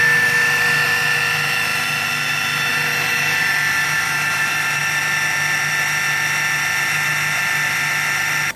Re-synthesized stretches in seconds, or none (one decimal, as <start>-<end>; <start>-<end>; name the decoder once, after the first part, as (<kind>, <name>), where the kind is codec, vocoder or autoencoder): none